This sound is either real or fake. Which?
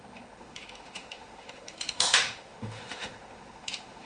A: fake